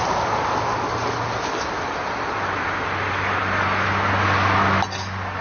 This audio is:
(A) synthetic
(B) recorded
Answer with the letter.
B